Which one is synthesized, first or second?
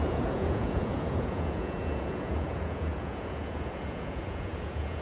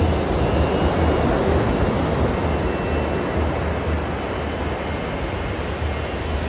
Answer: first